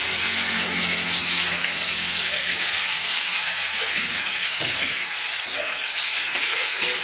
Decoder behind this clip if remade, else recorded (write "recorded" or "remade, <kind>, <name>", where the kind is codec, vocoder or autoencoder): remade, codec, SNAC